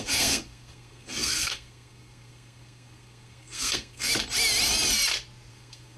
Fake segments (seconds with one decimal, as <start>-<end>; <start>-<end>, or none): 0.0-4.1; 5.5-6.0